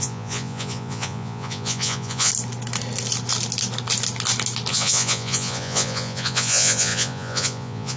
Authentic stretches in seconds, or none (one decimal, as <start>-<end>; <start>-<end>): 2.3-4.7